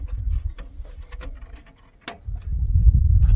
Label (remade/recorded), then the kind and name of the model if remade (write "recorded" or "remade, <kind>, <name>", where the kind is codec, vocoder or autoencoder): recorded